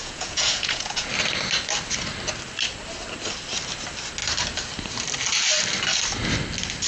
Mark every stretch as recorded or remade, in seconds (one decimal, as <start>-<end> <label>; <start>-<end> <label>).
0.0-1.1 remade; 1.1-6.9 recorded